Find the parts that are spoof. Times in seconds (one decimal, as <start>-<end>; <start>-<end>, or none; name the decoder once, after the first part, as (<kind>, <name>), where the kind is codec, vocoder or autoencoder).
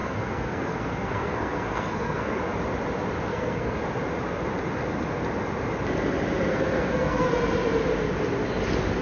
0.0-2.4 (codec, SNAC); 3.3-3.8; 6.5-7.3